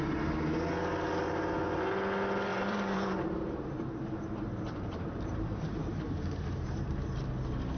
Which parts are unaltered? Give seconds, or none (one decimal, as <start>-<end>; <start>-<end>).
0.0-2.5; 7.2-7.8